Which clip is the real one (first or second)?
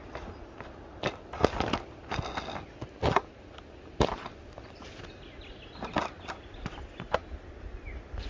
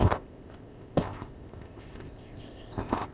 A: first